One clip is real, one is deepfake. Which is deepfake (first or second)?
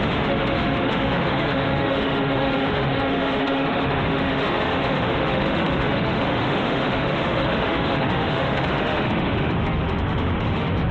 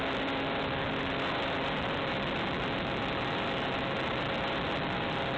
first